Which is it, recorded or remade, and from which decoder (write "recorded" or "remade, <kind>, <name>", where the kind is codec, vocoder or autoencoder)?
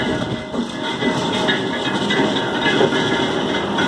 recorded